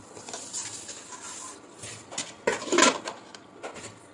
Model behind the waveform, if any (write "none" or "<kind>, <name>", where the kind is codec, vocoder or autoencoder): none